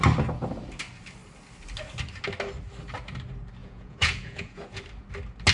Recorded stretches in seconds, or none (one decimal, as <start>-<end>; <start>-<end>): 0.0-3.6; 4.8-5.5